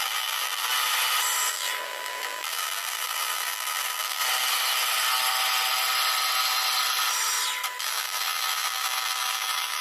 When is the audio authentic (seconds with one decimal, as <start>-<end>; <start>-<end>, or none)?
0.7-1.5; 4.2-7.8